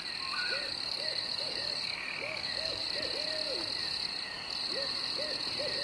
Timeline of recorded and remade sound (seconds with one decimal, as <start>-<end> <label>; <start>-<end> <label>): 0.0-0.7 recorded; 0.7-2.8 remade; 2.8-5.8 recorded